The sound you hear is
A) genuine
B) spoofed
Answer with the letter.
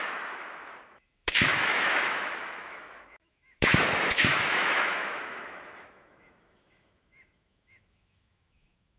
B